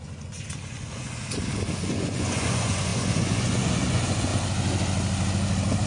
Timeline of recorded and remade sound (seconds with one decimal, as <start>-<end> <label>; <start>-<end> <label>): 0.0-1.2 remade; 1.2-1.8 recorded; 1.8-4.3 remade; 4.3-5.9 recorded

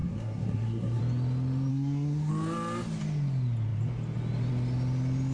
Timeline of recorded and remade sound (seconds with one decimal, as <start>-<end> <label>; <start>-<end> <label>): 0.0-1.0 remade; 1.0-1.7 recorded; 1.7-2.3 remade; 2.3-5.3 recorded

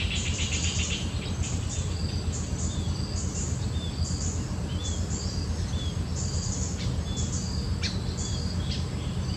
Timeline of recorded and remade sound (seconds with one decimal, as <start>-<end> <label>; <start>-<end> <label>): 0.0-9.4 recorded

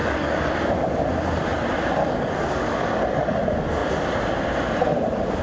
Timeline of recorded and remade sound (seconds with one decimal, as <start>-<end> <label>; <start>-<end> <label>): 0.0-0.7 remade; 0.7-2.0 recorded; 2.0-3.4 remade; 3.4-5.4 recorded

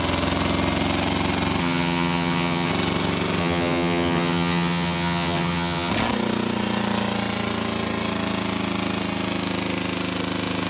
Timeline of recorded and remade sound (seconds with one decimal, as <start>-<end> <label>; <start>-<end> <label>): 0.0-1.6 recorded; 1.6-2.7 remade; 2.7-3.4 recorded; 3.4-5.9 remade; 5.9-10.7 recorded